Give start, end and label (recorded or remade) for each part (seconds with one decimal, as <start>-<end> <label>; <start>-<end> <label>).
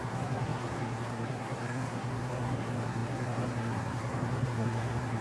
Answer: 0.0-5.2 remade